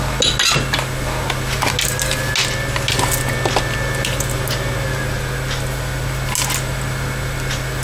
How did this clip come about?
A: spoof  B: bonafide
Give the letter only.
B